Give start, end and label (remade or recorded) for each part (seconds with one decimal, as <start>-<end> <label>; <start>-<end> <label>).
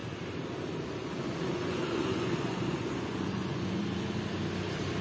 0.0-1.0 recorded; 1.0-3.8 remade; 3.8-5.0 recorded